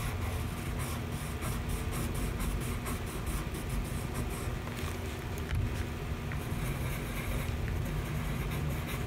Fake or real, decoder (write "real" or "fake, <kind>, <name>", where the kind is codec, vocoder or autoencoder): real